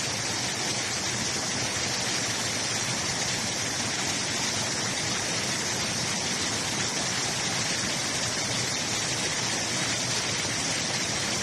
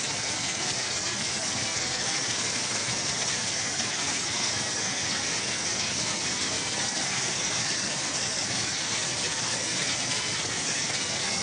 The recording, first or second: first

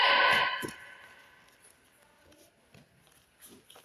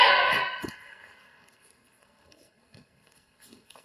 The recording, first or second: first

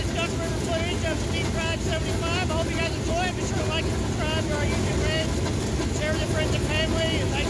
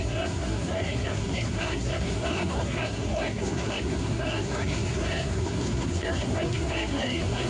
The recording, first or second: first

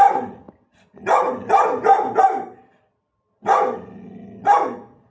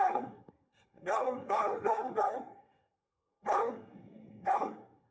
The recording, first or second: first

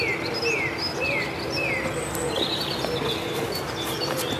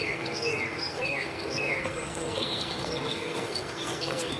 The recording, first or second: first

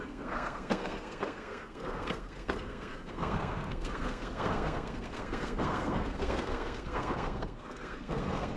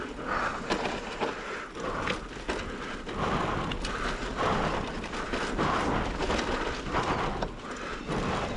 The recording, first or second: second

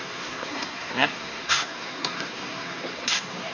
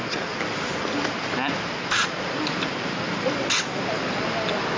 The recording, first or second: second